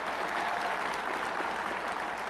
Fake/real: real